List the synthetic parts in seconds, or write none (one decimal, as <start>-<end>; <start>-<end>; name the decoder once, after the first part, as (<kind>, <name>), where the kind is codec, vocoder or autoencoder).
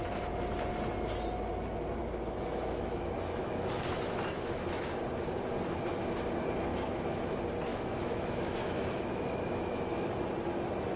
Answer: 2.0-4.9 (autoencoder, DAC-VAE); 6.7-7.2; 7.7-10.1